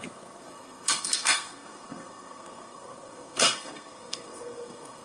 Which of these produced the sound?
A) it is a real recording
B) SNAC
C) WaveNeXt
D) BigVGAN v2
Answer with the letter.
B